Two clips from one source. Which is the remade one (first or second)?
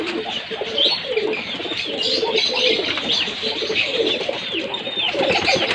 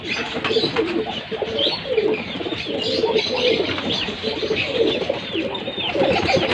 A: second